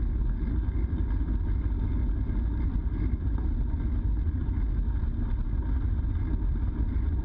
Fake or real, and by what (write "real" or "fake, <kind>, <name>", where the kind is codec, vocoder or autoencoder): real